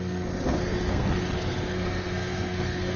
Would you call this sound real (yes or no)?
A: no